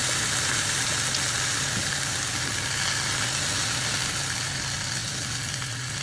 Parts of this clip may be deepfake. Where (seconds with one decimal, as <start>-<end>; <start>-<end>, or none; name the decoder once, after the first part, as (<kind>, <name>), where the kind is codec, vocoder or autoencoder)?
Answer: none